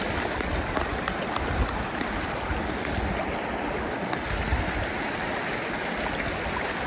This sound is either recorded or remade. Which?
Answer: recorded